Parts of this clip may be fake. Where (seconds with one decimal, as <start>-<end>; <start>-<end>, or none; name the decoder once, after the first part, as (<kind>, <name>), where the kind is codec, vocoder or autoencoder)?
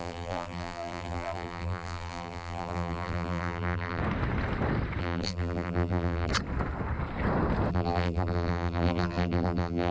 0.0-4.0 (vocoder, BigVGAN v2); 5.0-6.3; 7.7-9.9